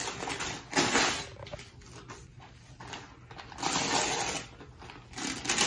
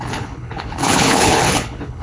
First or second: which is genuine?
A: first